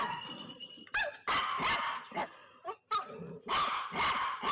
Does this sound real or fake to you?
real